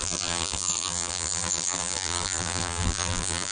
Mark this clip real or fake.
fake